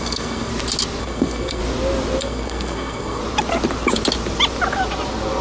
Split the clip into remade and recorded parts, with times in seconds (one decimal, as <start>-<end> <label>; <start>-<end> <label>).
0.0-0.5 remade; 0.5-1.0 recorded; 1.0-1.6 remade; 1.6-2.2 recorded; 2.2-3.2 remade; 3.2-5.4 recorded